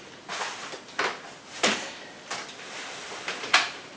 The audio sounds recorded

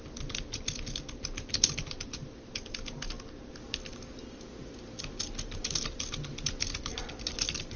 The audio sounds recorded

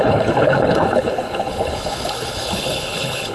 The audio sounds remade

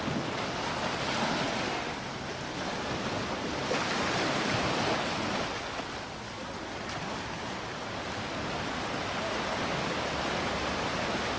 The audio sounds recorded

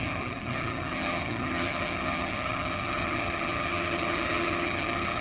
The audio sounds remade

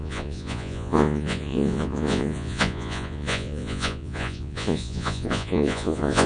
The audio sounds remade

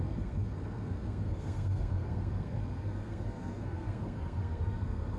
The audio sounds remade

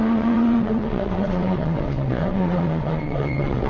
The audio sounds remade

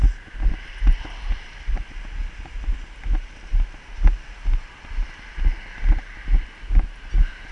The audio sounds recorded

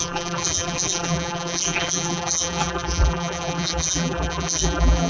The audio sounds remade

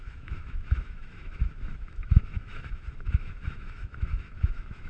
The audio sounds remade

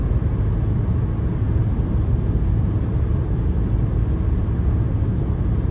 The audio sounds recorded